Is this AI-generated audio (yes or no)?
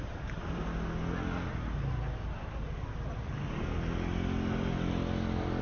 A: no